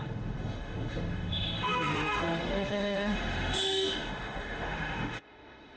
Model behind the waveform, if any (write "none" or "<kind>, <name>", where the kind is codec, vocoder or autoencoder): autoencoder, DAC-VAE